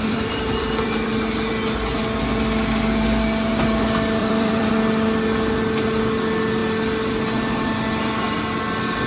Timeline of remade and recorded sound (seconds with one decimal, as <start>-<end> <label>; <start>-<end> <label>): 0.0-1.5 remade; 1.5-4.2 recorded; 4.2-4.7 remade; 4.7-9.1 recorded